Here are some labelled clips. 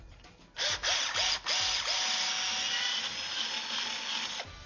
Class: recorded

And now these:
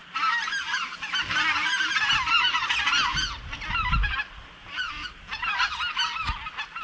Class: recorded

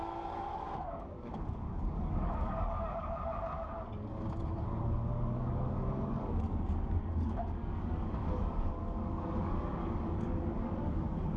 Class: remade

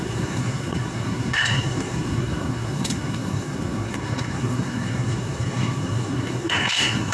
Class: remade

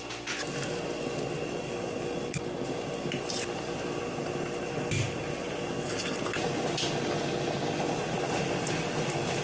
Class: recorded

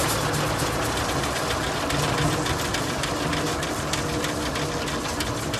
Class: recorded